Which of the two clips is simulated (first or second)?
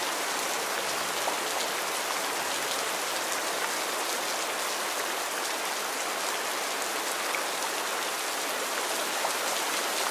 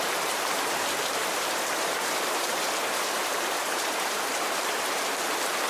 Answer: second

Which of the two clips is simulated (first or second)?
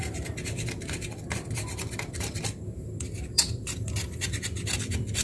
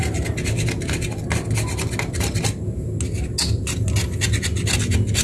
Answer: first